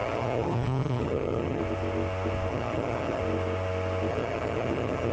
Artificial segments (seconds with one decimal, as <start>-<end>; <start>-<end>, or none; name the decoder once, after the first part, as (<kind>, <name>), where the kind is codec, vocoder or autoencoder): 0.0-1.6 (vocoder, HiFi-GAN); 2.5-3.2; 4.1-5.1